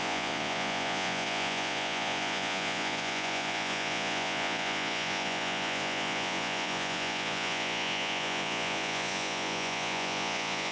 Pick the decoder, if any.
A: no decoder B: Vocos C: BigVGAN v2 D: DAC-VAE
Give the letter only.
B